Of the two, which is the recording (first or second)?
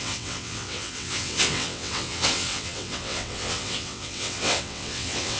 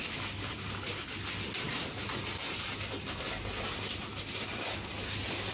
second